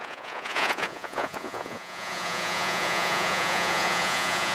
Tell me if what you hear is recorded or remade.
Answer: remade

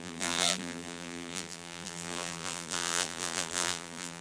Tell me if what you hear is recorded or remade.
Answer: remade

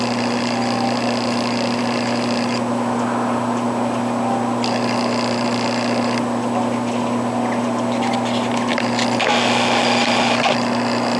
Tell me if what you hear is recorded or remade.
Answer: recorded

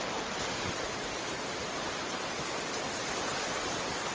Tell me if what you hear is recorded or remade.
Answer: recorded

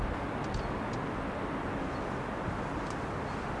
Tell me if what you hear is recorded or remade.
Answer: recorded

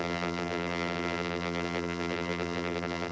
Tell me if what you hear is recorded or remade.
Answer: remade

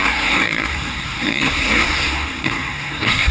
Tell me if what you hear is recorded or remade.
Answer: remade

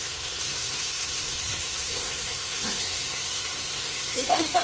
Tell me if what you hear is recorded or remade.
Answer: remade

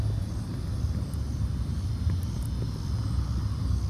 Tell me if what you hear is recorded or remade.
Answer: recorded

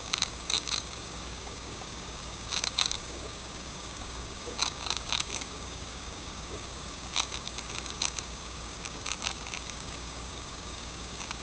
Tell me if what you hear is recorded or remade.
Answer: remade